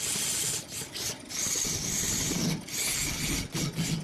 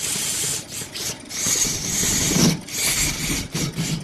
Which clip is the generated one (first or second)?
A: second